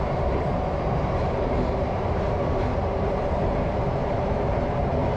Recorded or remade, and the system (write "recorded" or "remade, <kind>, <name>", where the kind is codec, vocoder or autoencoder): remade, vocoder, BigVGAN v2